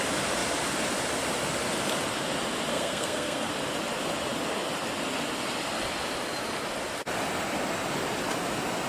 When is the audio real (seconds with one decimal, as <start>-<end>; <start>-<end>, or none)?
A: 0.0-2.7; 3.5-8.9